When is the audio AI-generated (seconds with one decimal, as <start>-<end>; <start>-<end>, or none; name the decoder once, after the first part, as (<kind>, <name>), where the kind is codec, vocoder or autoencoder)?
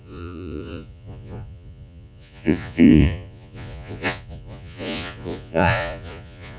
0.0-6.6 (vocoder, Vocos)